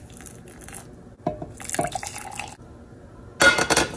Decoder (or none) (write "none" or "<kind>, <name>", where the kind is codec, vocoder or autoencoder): none